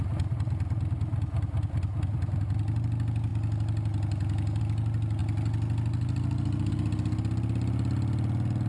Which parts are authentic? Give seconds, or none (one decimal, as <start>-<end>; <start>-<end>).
0.0-8.7